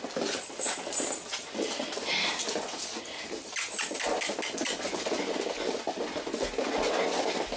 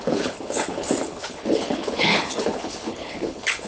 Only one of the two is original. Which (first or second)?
first